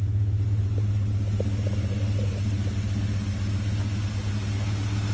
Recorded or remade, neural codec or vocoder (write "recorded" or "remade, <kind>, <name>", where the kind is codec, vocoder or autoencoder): recorded